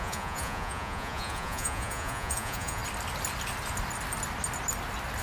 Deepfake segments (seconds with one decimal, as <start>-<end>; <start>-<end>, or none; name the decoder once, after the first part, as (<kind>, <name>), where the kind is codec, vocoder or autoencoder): 0.0-2.8 (vocoder, Vocos)